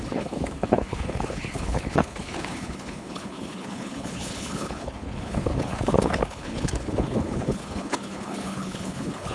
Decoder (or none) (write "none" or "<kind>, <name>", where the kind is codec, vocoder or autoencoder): codec, HILCodec